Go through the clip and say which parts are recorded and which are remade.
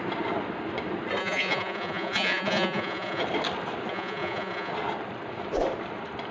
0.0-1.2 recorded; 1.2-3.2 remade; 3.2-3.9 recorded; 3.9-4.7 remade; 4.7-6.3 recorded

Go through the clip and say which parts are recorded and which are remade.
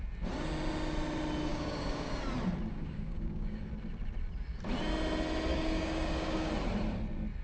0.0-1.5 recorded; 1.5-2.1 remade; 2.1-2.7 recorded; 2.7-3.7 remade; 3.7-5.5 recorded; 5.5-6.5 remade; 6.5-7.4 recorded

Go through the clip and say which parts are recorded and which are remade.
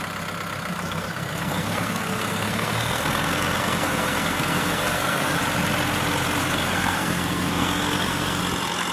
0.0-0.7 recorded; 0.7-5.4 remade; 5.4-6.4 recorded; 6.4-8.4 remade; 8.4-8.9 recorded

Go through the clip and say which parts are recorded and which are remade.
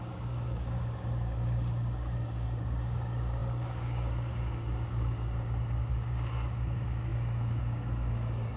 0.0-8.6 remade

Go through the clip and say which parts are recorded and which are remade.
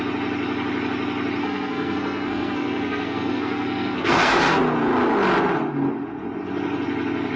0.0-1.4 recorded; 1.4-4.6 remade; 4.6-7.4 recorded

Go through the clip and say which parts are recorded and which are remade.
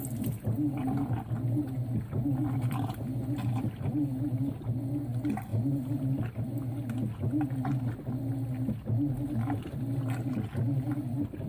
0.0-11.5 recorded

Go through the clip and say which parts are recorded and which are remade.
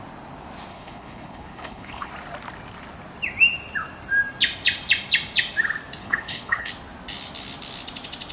0.0-0.7 recorded; 0.7-2.1 remade; 2.1-6.0 recorded; 6.0-6.7 remade; 6.7-8.3 recorded